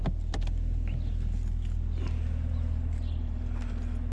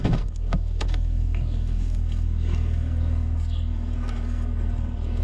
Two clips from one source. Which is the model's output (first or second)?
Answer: second